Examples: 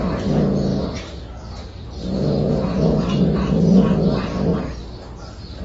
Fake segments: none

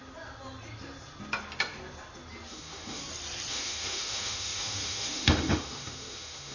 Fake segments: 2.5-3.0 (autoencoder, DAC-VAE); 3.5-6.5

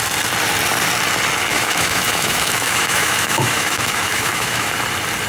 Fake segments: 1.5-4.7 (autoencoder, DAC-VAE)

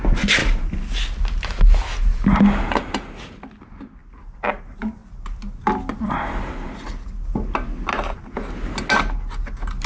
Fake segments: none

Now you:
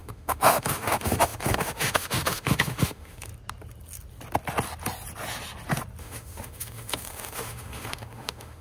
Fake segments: 0.0-3.3 (autoencoder, DAC-VAE); 6.0-8.6

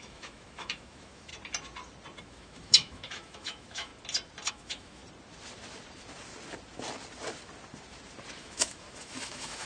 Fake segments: 0.0-1.3 (autoencoder, DAC-VAE); 2.2-3.9; 4.5-5.0; 8.4-9.7

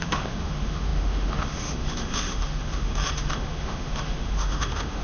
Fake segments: 0.0-5.0 (autoencoder, DAC-VAE)

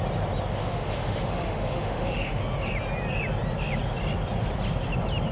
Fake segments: 0.6-2.4 (autoencoder, DAC-VAE)